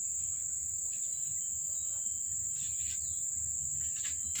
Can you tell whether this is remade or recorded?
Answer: recorded